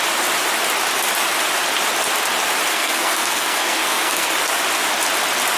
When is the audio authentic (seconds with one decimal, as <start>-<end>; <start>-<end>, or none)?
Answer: 0.0-2.7; 4.3-5.6